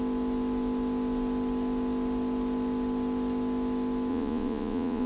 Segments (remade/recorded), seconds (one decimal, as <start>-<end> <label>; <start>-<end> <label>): 0.0-4.1 recorded; 4.1-5.1 remade